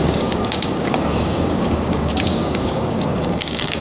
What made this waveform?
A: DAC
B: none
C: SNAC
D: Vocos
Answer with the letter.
A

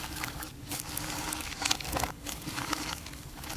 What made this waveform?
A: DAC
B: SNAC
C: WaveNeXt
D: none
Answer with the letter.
A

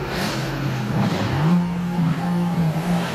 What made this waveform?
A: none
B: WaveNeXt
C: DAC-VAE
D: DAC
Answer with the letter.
D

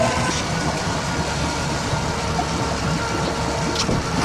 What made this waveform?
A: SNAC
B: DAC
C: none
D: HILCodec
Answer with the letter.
C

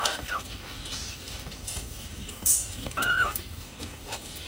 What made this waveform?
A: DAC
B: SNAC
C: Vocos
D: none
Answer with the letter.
A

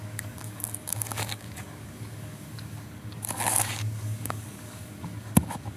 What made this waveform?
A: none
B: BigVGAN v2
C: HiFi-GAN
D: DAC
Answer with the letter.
D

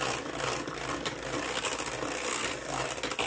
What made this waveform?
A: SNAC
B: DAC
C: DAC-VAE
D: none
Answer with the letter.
D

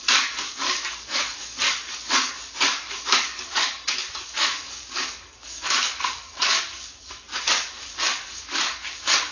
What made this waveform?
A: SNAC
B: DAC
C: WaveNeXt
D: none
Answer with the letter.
B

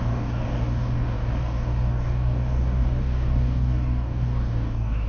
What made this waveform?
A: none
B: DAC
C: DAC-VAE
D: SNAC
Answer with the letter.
B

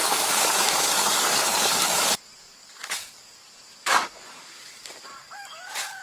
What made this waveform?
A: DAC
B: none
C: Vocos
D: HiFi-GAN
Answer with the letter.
A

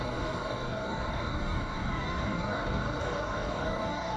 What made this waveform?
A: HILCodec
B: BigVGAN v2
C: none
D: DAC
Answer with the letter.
D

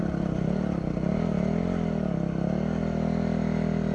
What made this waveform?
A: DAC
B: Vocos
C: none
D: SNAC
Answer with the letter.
C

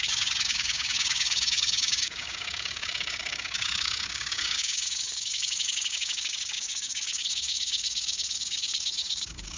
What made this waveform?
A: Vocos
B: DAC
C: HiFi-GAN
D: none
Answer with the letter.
B